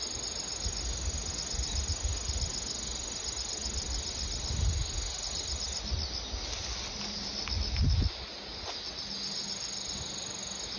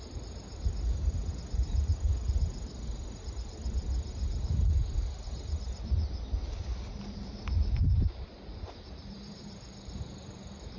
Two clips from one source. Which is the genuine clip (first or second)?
first